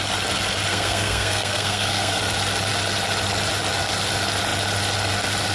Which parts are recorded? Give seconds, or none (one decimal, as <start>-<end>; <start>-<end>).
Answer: 0.0-0.7; 2.2-5.5